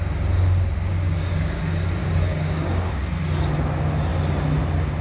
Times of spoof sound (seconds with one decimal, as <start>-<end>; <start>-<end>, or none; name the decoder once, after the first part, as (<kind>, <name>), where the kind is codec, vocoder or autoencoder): 0.9-1.6 (codec, DAC); 2.0-2.9